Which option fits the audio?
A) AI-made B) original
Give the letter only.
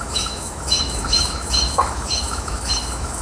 A